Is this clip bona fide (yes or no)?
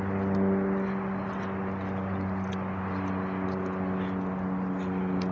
yes